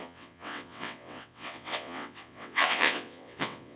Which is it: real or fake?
fake